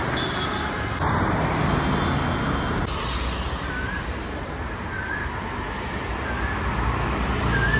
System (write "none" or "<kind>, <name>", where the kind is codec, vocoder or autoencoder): none